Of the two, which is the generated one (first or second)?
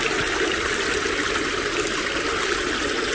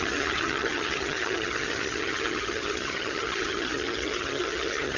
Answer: second